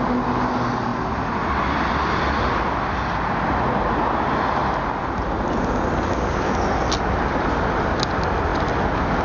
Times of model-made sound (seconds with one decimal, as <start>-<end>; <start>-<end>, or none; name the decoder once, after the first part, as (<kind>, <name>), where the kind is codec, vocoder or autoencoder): none

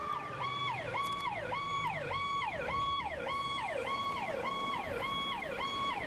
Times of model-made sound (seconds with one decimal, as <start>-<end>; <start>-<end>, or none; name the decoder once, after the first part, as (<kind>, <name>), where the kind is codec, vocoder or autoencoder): 0.0-6.1 (vocoder, BigVGAN v2)

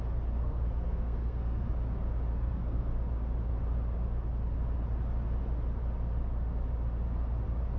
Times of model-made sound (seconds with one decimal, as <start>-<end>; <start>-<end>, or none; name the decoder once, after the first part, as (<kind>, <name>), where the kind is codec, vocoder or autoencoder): 0.4-1.7 (codec, SNAC); 2.3-2.9

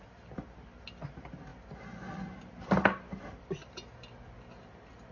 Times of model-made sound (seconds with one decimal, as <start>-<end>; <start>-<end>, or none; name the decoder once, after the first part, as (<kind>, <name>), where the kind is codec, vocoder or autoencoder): none

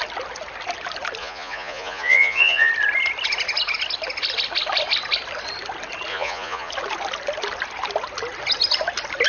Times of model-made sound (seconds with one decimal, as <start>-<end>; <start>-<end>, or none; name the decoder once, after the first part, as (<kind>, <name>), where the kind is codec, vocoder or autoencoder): 1.2-2.7 (vocoder, Vocos); 6.1-6.7

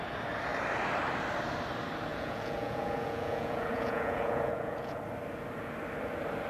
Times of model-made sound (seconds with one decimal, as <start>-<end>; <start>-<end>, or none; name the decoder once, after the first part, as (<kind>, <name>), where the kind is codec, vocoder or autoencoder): 2.1-5.0 (vocoder, Vocos)

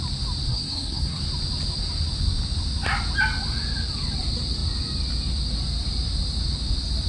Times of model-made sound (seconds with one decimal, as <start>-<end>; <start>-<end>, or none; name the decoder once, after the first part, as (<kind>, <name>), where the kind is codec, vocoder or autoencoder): 0.5-1.2 (codec, SNAC)

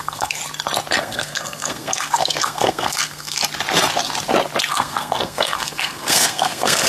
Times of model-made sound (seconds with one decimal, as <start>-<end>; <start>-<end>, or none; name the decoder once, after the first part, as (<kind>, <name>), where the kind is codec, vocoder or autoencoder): 0.0-0.4 (codec, SNAC); 1.0-3.4; 4.7-6.9